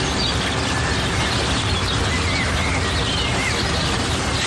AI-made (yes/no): no